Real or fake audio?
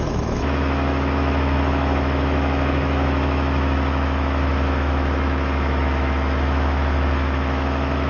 fake